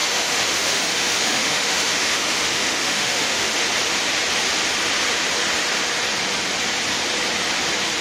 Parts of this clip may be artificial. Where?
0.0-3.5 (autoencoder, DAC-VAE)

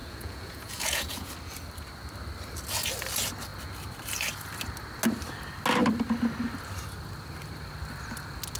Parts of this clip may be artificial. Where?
0.0-1.3 (vocoder, Vocos)